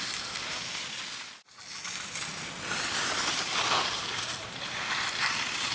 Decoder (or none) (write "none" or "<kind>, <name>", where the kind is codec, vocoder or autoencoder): none